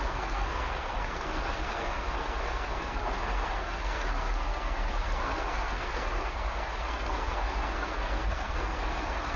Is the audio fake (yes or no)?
yes